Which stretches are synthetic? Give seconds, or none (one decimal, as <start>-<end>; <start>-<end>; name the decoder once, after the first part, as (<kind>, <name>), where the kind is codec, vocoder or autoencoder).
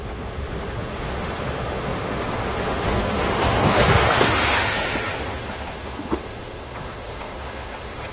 0.0-8.1 (autoencoder, DAC-VAE)